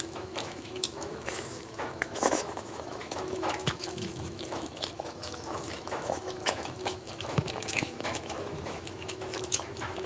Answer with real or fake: fake